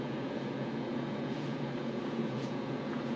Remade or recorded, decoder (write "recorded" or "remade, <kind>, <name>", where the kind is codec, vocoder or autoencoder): remade, vocoder, Vocos